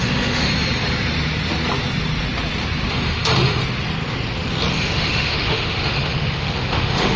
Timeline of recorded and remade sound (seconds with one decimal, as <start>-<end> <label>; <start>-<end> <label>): 0.0-0.5 remade; 0.5-2.9 recorded; 2.9-3.6 remade; 3.6-4.7 recorded; 4.7-7.2 remade